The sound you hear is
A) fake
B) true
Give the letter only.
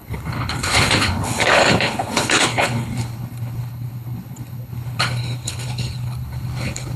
A